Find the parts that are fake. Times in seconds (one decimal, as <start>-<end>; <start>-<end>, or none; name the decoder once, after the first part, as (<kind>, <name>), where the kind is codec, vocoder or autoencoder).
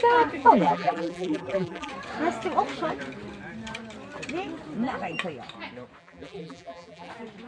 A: 0.4-1.9 (vocoder, BigVGAN v2); 6.0-7.1